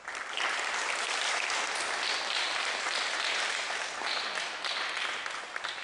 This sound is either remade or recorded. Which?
recorded